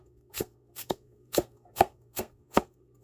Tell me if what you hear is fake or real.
fake